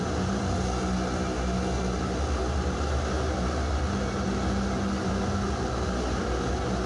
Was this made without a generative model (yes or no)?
yes